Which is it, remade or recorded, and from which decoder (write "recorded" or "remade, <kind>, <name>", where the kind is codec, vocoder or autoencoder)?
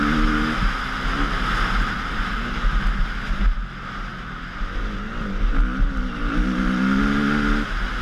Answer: recorded